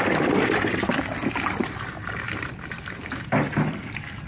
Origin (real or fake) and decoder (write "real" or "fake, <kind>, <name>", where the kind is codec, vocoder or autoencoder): real